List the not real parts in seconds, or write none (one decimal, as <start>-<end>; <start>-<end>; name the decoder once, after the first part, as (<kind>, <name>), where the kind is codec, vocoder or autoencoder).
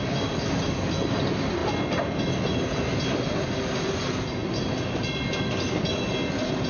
none